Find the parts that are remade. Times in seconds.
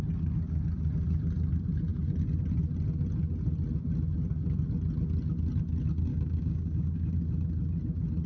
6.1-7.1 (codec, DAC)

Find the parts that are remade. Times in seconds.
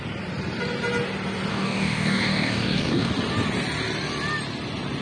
1.5-3.1 (codec, DAC)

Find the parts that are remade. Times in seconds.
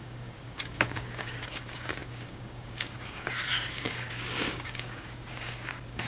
0.0-6.1 (codec, DAC)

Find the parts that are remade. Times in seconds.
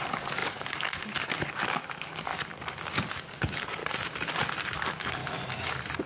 0.0-2.3 (codec, DAC); 3.2-3.8; 4.8-5.2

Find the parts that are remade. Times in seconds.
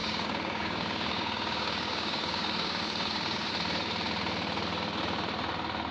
0.0-3.5 (codec, DAC)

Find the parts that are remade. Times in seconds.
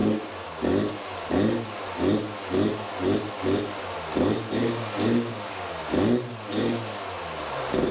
4.6-5.8 (codec, DAC)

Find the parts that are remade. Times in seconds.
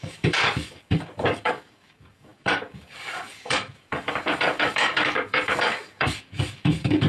0.0-7.1 (codec, DAC)